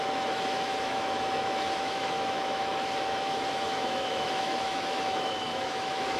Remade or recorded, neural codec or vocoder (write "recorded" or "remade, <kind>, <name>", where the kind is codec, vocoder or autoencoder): remade, autoencoder, DAC-VAE